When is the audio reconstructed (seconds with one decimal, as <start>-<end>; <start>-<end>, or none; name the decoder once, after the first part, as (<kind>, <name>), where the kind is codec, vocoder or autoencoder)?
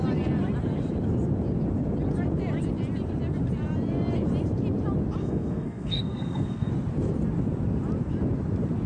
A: 5.2-6.7 (codec, SNAC)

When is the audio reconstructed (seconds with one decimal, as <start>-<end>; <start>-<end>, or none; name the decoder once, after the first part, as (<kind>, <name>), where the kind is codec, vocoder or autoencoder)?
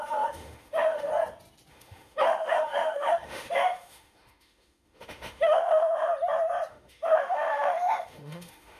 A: 0.0-1.1 (autoencoder, DAC-VAE); 1.7-6.1; 6.7-8.8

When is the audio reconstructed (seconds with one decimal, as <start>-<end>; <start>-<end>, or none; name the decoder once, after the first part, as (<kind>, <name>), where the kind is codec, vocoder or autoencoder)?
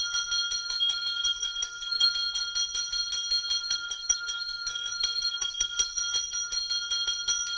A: 0.6-2.1 (codec, SNAC); 3.6-6.0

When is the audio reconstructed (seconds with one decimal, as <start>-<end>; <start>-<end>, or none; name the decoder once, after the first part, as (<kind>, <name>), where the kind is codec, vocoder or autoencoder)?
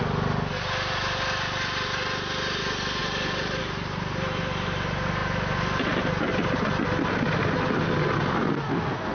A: 3.0-3.6 (vocoder, BigVGAN v2)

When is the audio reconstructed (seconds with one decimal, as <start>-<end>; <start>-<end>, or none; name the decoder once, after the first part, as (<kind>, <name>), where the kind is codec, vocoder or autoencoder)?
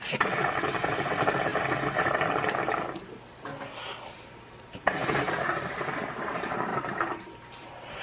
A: 0.0-1.5 (vocoder, BigVGAN v2); 4.3-8.0